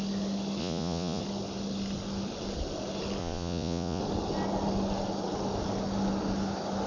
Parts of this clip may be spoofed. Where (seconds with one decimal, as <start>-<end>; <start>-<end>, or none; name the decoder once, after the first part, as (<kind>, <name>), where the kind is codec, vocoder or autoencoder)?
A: 0.6-1.2 (vocoder, Vocos); 3.2-4.0

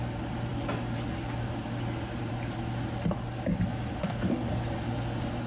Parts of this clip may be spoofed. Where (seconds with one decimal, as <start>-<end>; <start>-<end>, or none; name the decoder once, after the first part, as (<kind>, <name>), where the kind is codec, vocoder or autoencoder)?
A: 4.0-4.5 (codec, DAC)